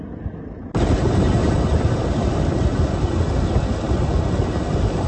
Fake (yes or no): no